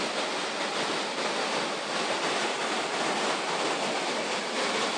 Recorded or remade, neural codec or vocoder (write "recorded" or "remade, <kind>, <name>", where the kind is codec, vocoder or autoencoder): recorded